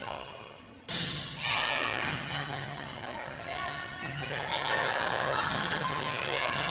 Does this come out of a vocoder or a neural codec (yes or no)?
yes